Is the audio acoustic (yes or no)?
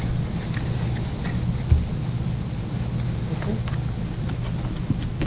yes